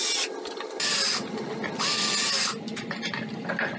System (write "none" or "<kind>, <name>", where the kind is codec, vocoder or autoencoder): none